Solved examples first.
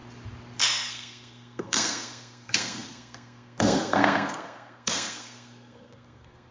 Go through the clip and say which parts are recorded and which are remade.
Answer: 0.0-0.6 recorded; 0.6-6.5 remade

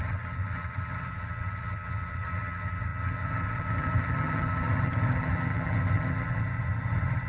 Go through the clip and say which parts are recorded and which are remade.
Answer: 0.0-7.3 remade

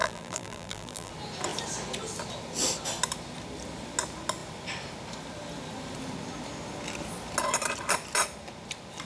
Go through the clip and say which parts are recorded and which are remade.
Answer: 0.0-1.1 remade; 1.1-9.1 recorded

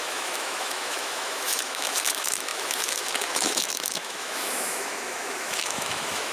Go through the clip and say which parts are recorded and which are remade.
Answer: 0.0-6.3 remade

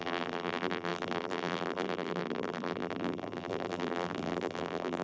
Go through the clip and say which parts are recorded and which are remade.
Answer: 0.0-5.0 remade

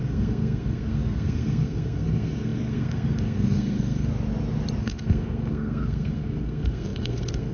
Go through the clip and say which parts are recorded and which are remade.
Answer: 0.0-4.1 remade; 4.1-4.8 recorded; 4.8-7.5 remade

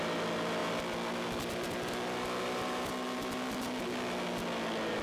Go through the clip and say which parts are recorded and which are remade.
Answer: 0.0-5.0 recorded

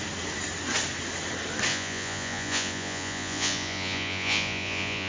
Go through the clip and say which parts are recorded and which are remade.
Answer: 0.0-1.7 recorded; 1.7-5.1 remade